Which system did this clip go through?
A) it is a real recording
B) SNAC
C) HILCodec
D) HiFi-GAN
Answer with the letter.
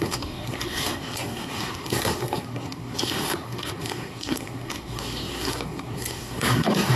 B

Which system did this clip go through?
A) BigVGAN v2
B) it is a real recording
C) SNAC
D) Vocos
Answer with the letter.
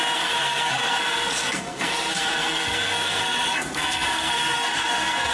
C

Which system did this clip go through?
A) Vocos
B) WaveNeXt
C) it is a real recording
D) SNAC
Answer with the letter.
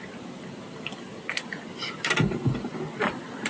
C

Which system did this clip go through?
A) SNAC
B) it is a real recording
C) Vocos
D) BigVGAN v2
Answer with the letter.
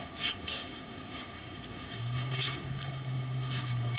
A